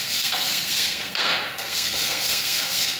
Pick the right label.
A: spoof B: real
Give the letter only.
A